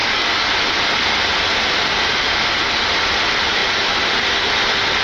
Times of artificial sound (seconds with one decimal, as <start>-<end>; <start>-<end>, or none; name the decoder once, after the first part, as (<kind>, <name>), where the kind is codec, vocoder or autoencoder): 0.0-0.5 (codec, DAC)